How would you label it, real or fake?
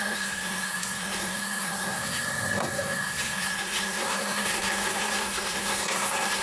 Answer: fake